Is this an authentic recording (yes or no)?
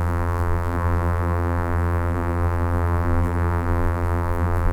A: no